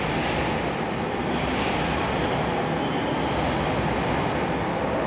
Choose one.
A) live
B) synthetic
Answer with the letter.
A